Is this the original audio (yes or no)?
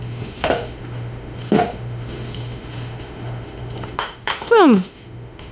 no